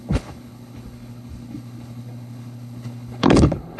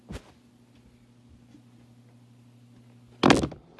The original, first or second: second